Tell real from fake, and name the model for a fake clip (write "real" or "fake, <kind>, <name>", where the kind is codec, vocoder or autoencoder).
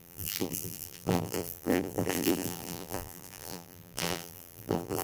fake, vocoder, BigVGAN v2